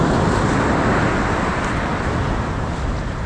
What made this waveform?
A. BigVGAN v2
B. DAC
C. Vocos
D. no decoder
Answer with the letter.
D